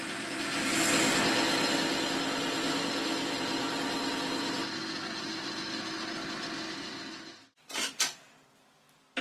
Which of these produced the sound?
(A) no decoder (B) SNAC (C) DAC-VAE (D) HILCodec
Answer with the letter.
A